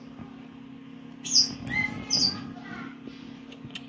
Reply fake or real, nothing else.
real